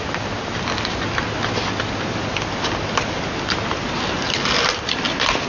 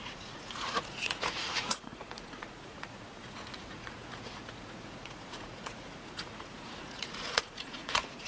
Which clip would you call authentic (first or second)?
first